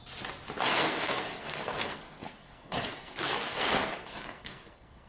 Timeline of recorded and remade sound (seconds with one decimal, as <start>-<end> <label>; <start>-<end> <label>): 0.0-0.6 recorded; 0.6-5.1 remade